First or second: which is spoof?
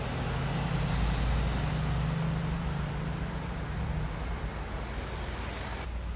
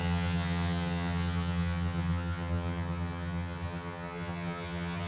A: second